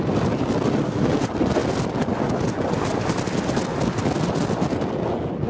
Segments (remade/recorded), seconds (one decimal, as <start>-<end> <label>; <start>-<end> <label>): 0.0-5.5 recorded